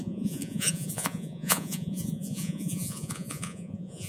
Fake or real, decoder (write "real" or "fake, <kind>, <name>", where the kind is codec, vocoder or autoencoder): fake, vocoder, Vocos